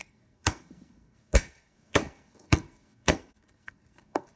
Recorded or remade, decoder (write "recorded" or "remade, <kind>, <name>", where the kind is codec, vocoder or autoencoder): remade, codec, SNAC